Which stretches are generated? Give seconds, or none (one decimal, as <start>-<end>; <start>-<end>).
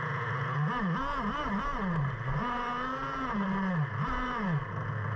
none